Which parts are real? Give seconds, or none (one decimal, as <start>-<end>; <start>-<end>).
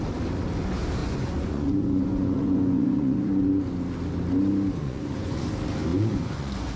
0.0-1.0; 3.6-4.8; 5.5-5.9